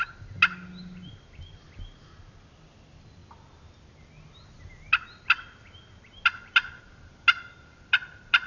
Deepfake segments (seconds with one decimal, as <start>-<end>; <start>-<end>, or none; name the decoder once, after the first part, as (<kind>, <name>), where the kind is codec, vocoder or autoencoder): none

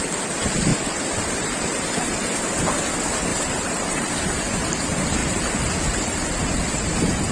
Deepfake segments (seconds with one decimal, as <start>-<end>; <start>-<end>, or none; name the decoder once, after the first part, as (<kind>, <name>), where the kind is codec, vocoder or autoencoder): 3.3-4.1 (vocoder, BigVGAN v2)

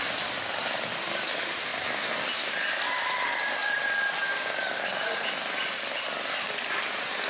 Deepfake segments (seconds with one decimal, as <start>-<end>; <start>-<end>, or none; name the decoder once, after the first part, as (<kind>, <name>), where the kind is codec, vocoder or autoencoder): none